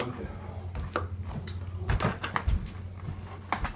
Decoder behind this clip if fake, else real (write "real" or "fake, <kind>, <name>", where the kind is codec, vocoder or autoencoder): real